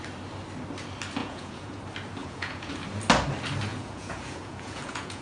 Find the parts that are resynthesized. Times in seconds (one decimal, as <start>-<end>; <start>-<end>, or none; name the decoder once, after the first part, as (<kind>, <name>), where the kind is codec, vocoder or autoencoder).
1.2-1.8 (vocoder, Vocos); 2.2-2.7; 3.7-5.2